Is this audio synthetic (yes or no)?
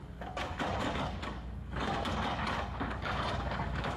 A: yes